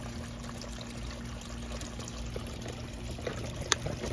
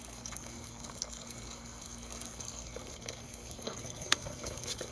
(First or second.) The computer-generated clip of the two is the second